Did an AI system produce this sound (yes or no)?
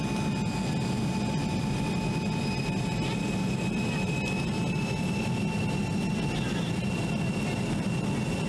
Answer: no